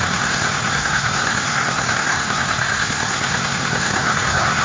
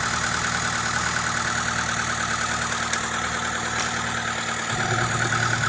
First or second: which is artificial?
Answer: first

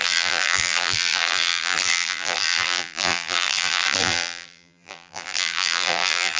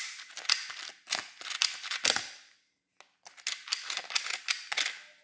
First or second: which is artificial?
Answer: first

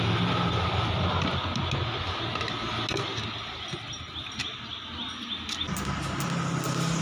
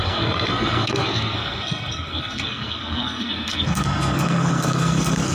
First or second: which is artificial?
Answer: second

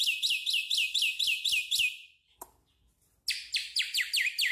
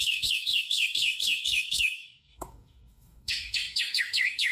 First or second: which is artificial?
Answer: second